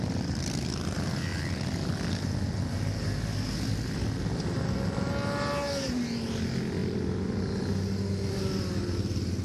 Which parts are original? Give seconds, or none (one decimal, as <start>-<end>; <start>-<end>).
0.0-9.4